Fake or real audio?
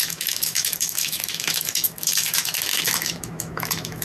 fake